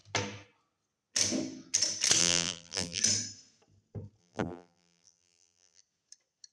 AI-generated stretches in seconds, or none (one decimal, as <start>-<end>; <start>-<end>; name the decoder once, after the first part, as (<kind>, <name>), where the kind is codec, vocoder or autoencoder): 2.2-3.0 (vocoder, BigVGAN v2); 4.2-5.8